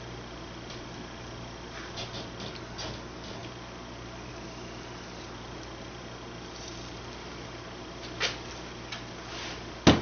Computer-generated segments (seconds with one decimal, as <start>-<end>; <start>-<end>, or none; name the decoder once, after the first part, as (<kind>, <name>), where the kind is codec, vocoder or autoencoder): none